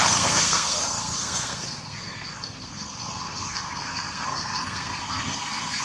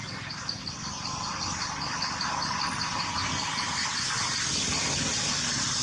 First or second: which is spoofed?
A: first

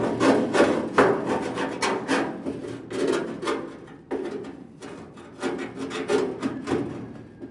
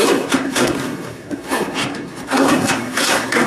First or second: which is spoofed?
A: second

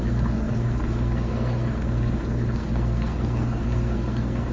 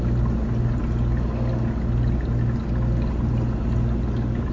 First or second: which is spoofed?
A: first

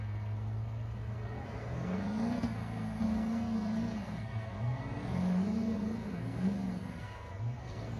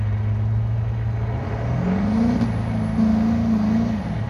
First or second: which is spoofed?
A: first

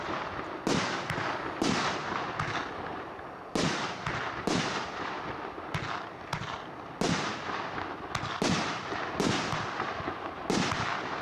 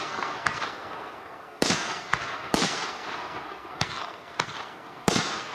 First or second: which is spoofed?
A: second